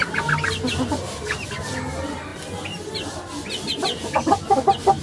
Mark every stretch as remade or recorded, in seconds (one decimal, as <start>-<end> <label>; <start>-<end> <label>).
0.0-5.0 recorded